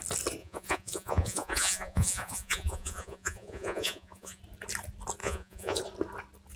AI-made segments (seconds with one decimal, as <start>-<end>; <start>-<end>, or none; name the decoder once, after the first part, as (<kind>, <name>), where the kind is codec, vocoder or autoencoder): 0.4-4.4 (vocoder, Vocos); 5.2-5.8